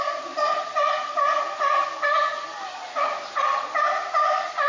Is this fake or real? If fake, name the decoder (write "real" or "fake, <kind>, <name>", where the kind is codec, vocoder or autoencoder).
real